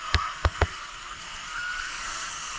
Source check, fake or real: fake